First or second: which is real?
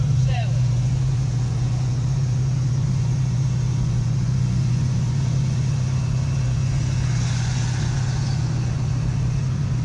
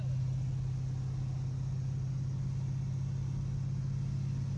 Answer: second